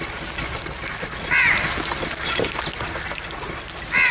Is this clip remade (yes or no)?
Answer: no